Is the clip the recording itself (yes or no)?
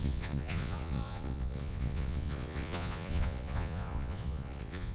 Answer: no